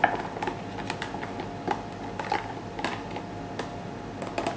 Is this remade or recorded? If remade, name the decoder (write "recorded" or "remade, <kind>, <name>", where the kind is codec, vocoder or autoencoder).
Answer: recorded